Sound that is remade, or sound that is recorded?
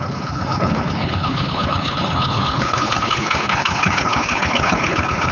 remade